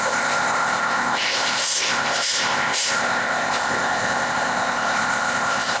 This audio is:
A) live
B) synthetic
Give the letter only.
B